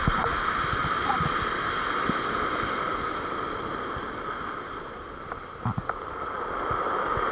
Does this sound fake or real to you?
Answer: real